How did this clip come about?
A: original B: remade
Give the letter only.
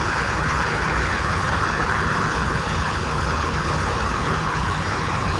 B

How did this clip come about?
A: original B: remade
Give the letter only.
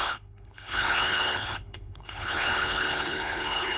B